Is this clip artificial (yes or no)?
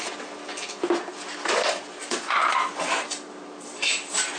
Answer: no